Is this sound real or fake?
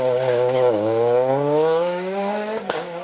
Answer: fake